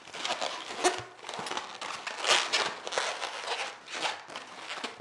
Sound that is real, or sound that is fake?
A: real